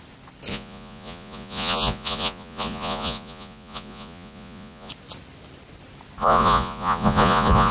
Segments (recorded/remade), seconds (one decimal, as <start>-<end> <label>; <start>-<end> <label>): 0.0-0.5 recorded; 0.5-4.9 remade; 4.9-6.2 recorded; 6.2-7.7 remade